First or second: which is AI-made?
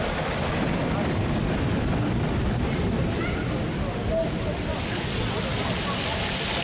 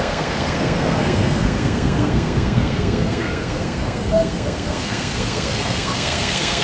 second